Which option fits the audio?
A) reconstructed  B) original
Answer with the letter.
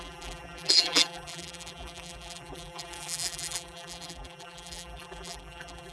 A